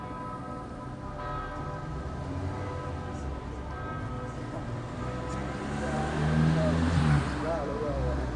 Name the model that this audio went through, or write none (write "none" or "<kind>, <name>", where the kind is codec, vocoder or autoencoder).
none